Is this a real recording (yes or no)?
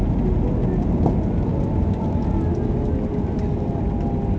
yes